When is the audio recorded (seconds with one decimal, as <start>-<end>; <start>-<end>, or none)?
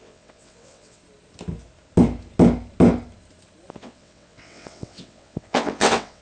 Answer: 1.0-3.7